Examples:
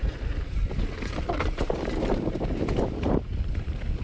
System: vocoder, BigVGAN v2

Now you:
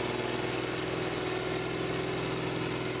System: none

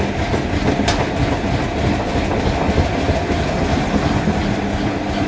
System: none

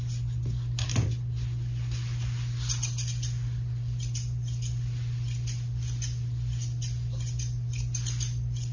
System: none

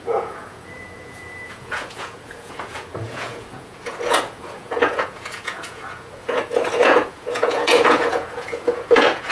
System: vocoder, Vocos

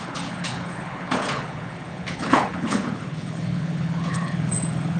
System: codec, HILCodec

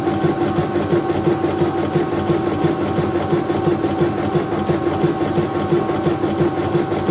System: none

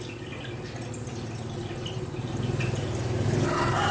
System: none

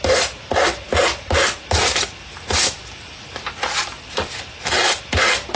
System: none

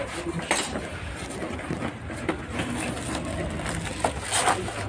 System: none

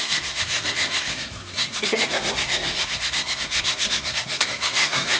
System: codec, SNAC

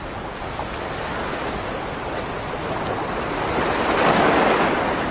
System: none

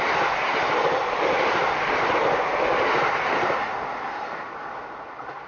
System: none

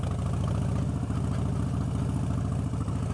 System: none